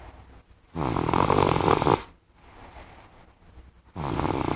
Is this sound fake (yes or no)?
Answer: no